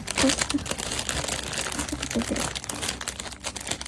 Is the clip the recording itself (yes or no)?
yes